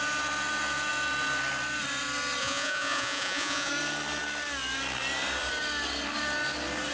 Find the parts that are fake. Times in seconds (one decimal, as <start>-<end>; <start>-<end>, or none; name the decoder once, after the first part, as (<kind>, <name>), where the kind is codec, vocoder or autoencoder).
2.4-3.7 (vocoder, Vocos)